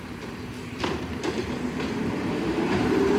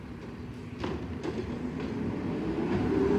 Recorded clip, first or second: second